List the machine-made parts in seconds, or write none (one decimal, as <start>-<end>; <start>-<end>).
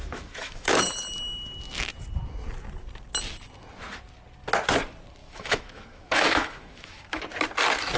0.0-0.8; 5.2-7.2